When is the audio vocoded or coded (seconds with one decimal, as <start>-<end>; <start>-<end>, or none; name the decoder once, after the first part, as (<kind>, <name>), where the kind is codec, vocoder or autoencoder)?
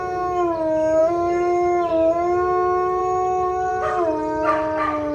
1.0-1.9 (autoencoder, DAC-VAE); 3.0-3.7